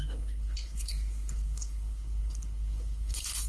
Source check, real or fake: fake